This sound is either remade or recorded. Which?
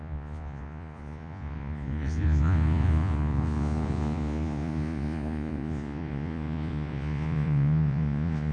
remade